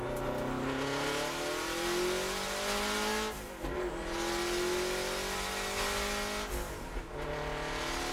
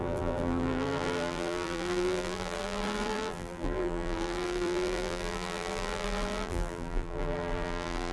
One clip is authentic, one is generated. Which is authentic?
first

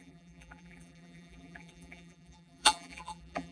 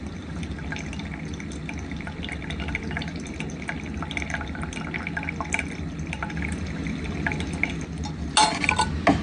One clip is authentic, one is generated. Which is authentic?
second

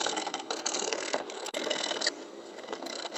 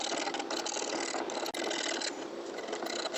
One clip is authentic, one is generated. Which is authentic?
second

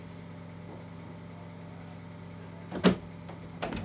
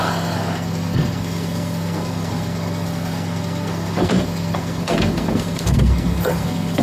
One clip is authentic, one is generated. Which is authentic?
first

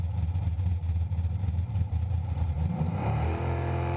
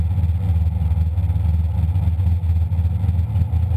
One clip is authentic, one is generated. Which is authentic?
second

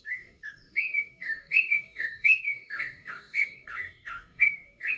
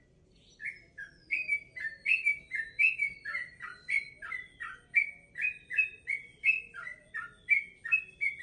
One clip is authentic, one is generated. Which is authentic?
second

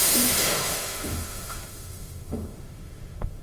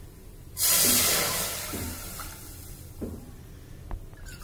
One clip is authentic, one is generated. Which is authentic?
second